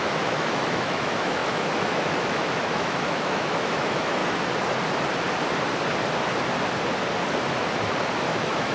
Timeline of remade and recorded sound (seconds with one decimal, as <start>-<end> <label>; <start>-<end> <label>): 0.0-4.2 remade; 4.2-8.2 recorded; 8.2-8.7 remade